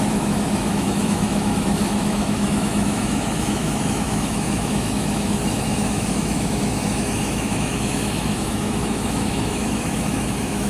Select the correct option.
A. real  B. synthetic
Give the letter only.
B